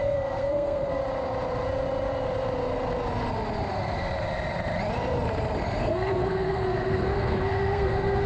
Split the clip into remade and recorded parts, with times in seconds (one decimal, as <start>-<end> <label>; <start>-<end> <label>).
0.0-1.0 remade; 1.0-5.8 recorded; 5.8-8.3 remade